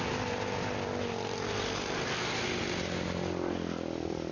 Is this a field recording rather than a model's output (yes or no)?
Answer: yes